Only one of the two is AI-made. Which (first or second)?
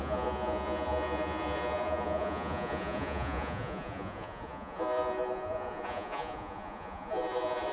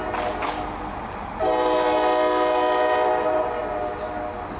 first